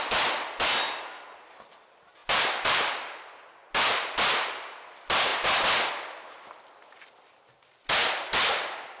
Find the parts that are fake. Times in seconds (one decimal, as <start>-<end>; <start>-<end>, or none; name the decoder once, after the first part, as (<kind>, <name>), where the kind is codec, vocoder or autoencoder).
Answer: 2.2-3.2 (vocoder, BigVGAN v2)